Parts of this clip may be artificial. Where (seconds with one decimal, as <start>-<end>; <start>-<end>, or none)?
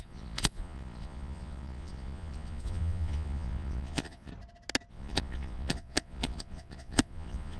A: 0.0-4.3; 4.9-7.6